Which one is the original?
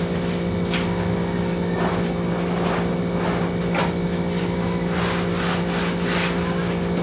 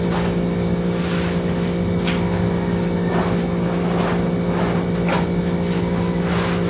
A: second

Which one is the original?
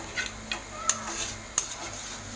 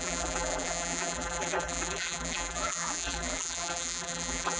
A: first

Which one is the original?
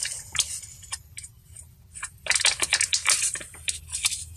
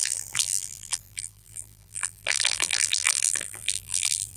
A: first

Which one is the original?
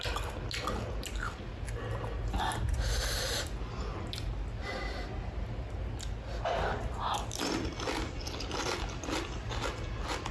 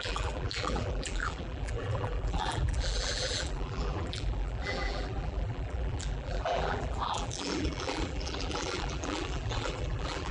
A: first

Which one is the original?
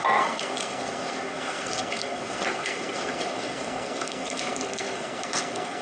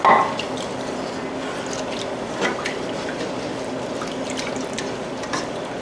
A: second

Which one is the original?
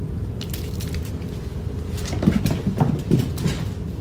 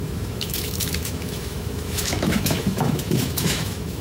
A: first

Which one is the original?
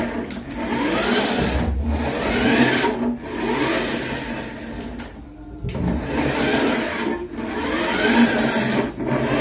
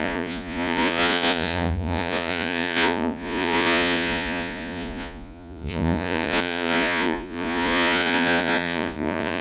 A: first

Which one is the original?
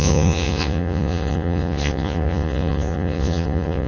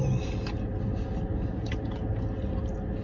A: second